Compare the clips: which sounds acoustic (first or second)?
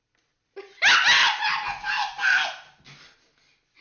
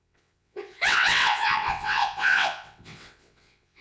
first